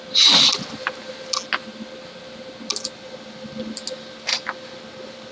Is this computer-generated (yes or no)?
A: no